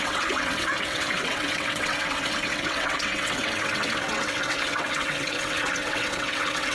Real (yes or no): no